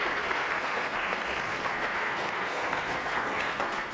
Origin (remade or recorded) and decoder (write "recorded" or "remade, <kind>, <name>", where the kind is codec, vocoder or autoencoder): remade, codec, SNAC